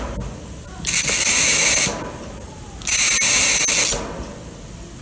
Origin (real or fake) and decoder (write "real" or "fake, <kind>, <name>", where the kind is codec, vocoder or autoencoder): real